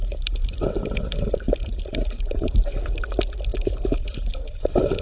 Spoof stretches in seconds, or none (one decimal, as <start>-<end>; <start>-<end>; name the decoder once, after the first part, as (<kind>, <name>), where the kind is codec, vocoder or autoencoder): 0.0-3.0 (vocoder, BigVGAN v2); 3.5-5.0